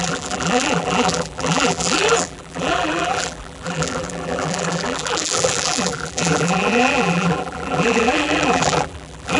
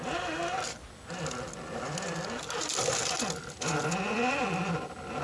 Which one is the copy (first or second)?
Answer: first